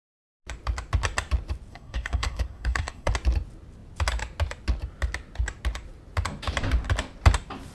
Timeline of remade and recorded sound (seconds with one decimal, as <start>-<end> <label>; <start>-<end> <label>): 0.0-1.7 recorded; 1.7-3.1 remade; 3.1-7.7 recorded